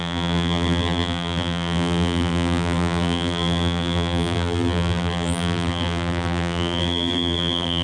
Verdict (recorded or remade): remade